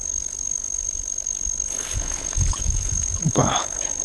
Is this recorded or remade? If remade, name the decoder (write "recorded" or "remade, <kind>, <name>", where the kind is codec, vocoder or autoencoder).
remade, codec, HILCodec